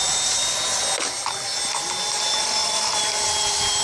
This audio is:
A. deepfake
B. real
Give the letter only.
B